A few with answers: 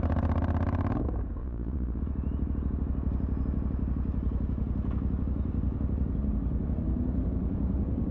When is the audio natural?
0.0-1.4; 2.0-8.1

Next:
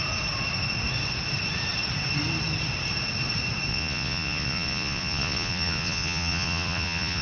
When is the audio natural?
0.0-3.7

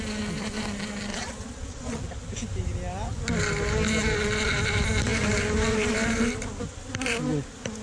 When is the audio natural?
0.0-1.1; 2.0-7.8

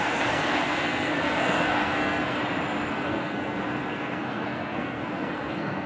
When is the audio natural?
2.4-2.9

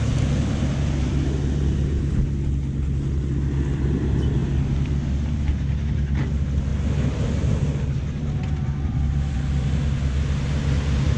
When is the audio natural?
0.0-11.2

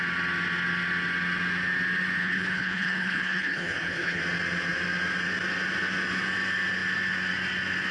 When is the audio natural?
0.0-2.2; 4.2-7.9